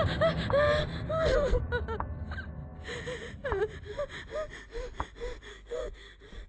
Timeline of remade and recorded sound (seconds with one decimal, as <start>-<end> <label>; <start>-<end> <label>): 0.0-0.8 recorded; 0.8-1.6 remade; 1.6-5.5 recorded; 5.5-6.5 remade